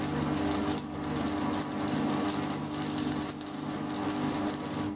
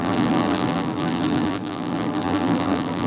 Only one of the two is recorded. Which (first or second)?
first